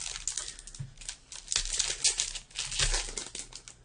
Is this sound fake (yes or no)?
no